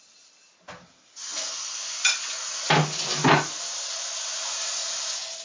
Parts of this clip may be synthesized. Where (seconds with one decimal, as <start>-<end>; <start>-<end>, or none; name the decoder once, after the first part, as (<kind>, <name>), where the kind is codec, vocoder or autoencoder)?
none